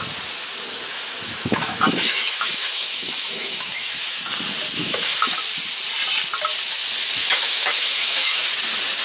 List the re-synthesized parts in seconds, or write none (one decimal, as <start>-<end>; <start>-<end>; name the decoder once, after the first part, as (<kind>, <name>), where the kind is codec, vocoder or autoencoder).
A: 0.9-4.3 (autoencoder, DAC-VAE); 4.8-5.4; 7.2-8.5